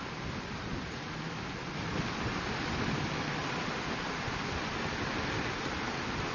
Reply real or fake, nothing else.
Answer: real